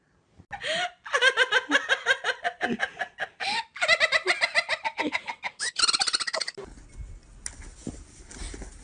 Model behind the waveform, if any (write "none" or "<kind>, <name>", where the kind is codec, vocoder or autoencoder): none